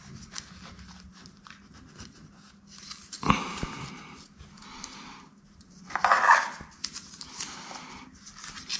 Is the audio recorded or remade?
recorded